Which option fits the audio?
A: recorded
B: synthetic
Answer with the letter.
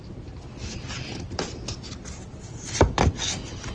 B